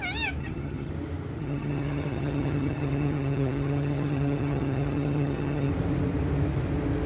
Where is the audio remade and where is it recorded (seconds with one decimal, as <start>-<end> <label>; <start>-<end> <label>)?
0.0-0.4 recorded; 0.4-0.9 remade; 0.9-1.4 recorded; 1.4-5.7 remade; 5.7-7.1 recorded